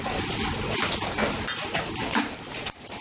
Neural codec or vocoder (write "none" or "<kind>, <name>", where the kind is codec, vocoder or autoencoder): vocoder, BigVGAN v2